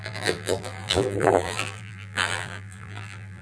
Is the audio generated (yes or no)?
yes